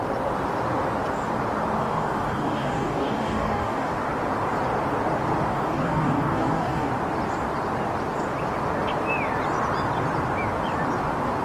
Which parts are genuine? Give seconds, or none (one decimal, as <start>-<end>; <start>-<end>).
0.0-1.8; 3.9-5.5; 6.9-11.4